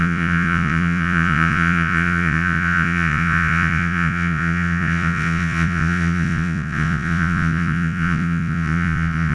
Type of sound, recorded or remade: remade